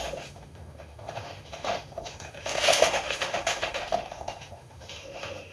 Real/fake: fake